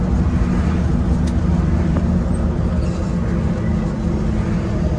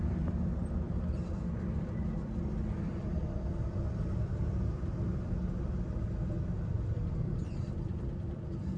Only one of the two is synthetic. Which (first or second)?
second